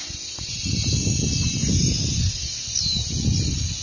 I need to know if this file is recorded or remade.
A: recorded